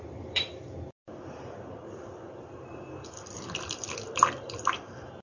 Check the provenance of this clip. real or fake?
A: fake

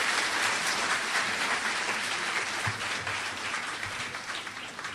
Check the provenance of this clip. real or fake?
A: fake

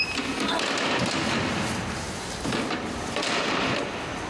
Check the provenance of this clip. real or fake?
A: real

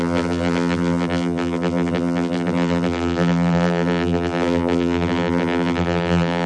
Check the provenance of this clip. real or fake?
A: fake